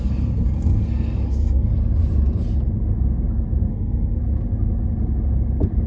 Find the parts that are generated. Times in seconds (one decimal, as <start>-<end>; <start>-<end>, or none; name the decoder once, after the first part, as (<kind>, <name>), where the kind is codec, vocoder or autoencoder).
0.0-1.7 (codec, SNAC); 3.7-4.2